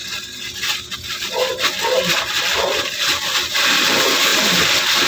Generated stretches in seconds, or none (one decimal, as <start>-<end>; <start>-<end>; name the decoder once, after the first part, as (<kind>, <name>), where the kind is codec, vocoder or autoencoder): 1.1-1.5 (vocoder, BigVGAN v2); 2.1-4.3